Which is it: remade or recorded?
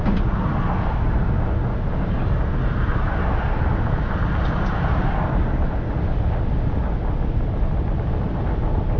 recorded